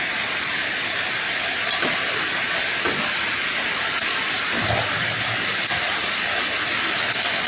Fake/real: real